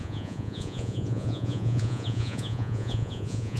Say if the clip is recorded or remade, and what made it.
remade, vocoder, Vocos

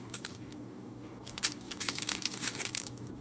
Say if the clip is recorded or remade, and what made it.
remade, codec, DAC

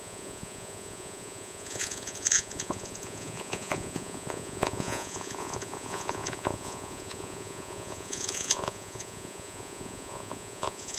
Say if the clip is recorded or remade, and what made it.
remade, vocoder, Vocos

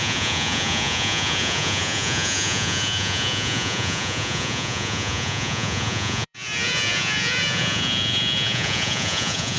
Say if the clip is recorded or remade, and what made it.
remade, vocoder, Vocos